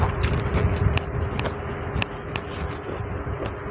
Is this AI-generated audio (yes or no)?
no